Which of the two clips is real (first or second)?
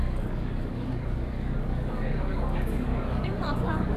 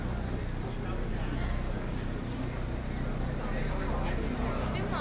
second